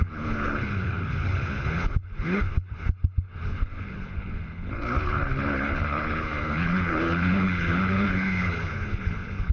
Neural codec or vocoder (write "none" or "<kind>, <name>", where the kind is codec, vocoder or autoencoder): codec, HILCodec